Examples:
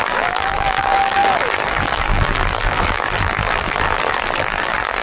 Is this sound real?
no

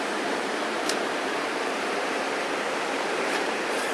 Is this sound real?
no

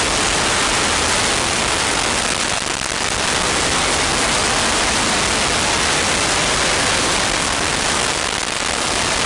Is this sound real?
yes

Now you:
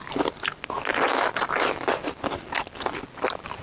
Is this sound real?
yes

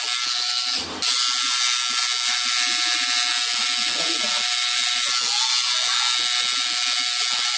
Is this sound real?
yes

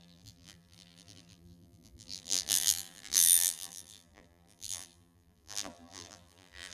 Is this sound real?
no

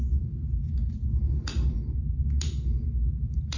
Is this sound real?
no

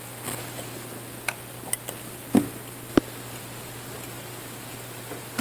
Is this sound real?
yes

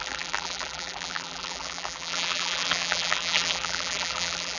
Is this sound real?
no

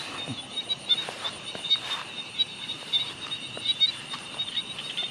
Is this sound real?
no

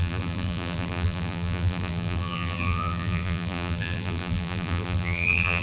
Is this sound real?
no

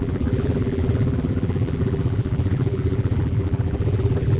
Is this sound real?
no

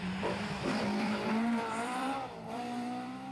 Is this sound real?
no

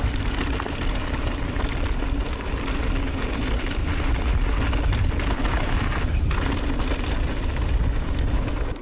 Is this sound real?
yes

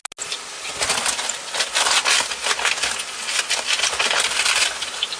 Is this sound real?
yes